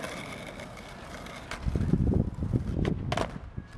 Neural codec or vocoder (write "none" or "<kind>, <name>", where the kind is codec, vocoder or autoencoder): none